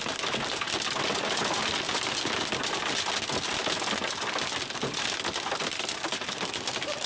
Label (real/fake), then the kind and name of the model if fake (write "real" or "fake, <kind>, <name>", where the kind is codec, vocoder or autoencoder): real